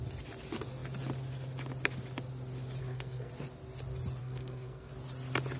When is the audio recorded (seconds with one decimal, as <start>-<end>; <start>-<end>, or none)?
0.0-2.8; 3.3-4.2; 4.9-5.6